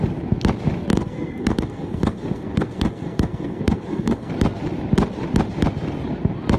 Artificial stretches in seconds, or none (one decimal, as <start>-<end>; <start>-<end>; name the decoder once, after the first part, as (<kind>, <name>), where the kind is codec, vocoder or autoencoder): 0.9-4.3 (codec, SNAC)